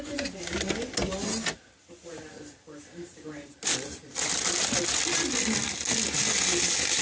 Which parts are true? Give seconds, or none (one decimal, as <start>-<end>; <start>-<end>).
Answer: 0.0-7.0